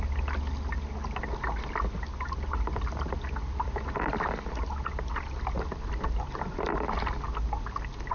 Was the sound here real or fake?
real